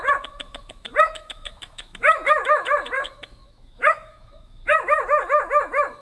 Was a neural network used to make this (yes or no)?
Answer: yes